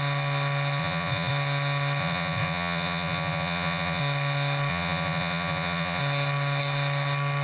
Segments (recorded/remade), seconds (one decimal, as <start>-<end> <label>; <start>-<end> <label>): 0.0-0.8 recorded; 0.8-1.3 remade; 1.3-2.0 recorded; 2.0-4.0 remade; 4.0-4.7 recorded; 4.7-6.0 remade; 6.0-7.4 recorded